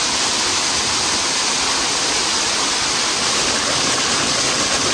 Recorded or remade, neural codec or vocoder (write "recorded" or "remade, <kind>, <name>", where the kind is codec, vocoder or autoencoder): recorded